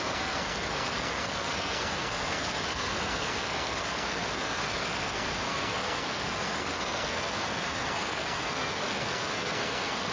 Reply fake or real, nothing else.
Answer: fake